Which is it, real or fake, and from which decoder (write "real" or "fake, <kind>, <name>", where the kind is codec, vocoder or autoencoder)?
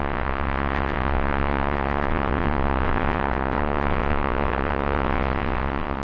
fake, vocoder, WaveNeXt